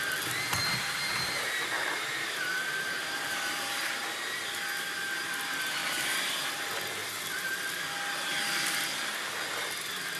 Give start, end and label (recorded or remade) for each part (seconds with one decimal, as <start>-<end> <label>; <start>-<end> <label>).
0.0-0.6 recorded; 0.6-4.4 remade; 4.4-5.8 recorded; 5.8-6.5 remade; 6.5-7.0 recorded; 7.0-7.6 remade; 7.6-10.2 recorded